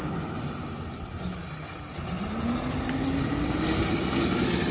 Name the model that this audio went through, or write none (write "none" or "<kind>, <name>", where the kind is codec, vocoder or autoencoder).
none